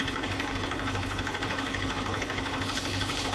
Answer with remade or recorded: remade